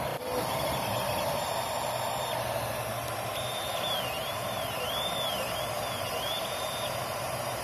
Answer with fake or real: fake